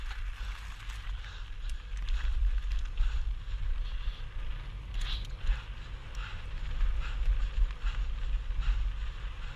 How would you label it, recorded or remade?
recorded